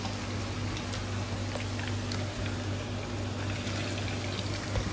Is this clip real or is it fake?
real